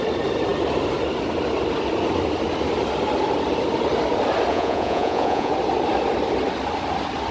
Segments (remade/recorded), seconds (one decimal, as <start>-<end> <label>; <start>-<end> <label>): 0.0-4.5 recorded; 4.5-5.5 remade; 5.5-7.3 recorded